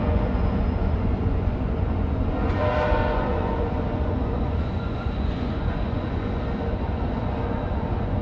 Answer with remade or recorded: remade